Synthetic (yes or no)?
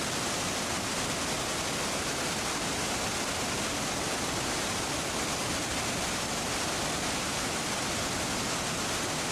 no